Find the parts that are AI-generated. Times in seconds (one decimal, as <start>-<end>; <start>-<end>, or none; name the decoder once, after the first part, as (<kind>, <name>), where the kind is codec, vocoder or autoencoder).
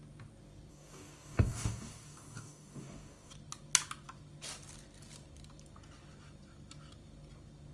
0.7-3.3 (codec, DAC)